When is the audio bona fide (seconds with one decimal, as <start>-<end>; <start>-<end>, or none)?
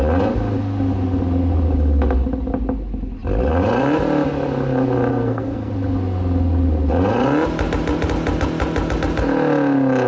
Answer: 0.0-5.1; 5.7-10.1